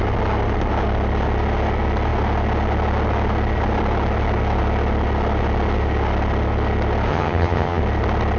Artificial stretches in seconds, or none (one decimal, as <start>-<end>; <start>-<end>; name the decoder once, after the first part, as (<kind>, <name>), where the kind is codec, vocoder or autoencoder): 7.1-7.8 (vocoder, HiFi-GAN)